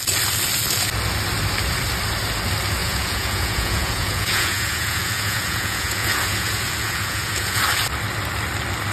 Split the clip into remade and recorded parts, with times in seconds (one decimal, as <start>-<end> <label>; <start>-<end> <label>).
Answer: 0.0-2.8 recorded; 2.8-7.6 remade; 7.6-8.9 recorded